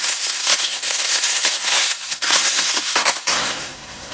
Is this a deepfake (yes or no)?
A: yes